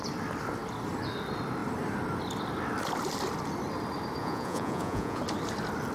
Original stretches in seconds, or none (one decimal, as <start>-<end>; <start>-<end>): 0.0-4.2; 5.2-5.9